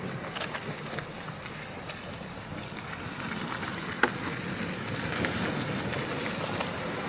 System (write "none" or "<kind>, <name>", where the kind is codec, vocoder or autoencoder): none